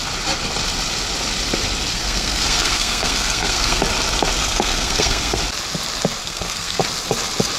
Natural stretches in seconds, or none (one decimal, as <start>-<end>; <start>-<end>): 0.0-1.9; 3.8-4.4; 5.4-6.2; 6.8-7.6